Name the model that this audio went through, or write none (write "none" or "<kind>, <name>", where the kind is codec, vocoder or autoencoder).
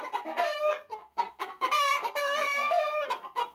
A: codec, SNAC